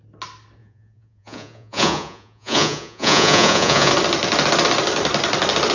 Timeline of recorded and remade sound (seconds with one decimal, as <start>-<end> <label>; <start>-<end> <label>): 0.0-0.6 recorded; 0.6-3.9 remade; 3.9-5.7 recorded